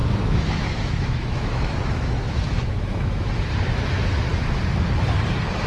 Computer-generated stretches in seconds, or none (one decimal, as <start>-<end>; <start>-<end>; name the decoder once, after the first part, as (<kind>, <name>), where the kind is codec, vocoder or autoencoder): 0.0-3.3 (autoencoder, DAC-VAE)